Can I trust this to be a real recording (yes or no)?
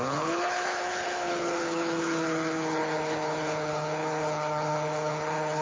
no